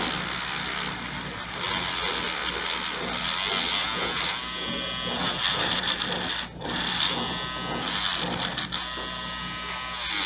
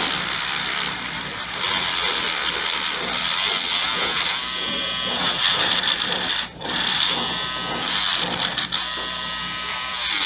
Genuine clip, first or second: first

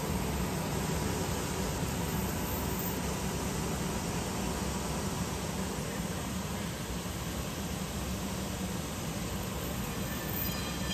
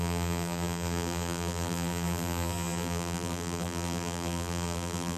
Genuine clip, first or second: first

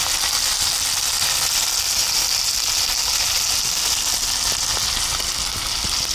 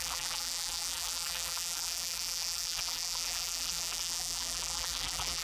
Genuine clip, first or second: first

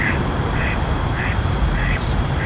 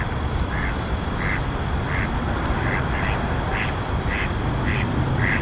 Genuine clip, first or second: second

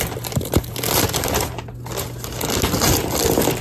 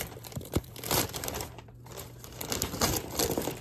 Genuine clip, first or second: first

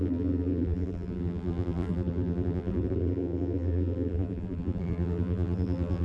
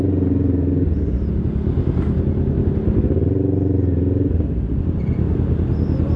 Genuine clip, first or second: second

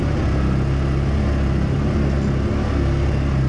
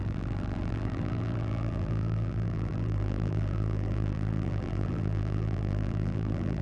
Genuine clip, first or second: first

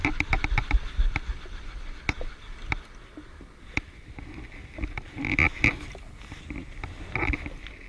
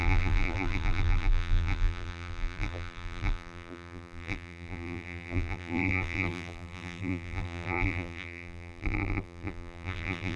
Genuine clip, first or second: first